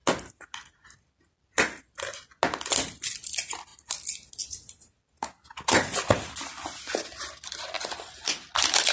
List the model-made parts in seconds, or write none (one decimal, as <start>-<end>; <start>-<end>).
none